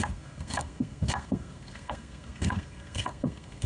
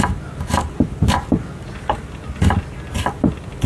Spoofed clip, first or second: first